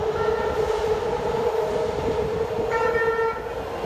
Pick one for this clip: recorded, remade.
recorded